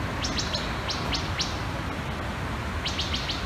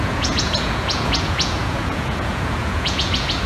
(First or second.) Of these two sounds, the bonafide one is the first